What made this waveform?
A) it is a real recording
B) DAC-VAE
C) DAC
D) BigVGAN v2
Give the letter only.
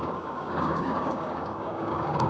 C